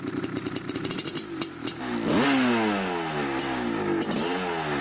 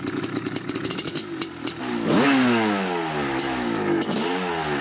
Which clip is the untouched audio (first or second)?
first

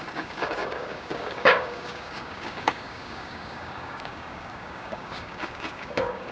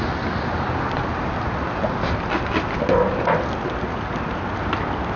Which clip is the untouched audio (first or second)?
second